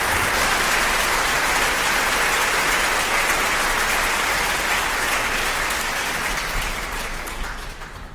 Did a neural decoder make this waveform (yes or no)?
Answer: no